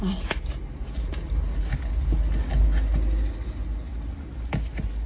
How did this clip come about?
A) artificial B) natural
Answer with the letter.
B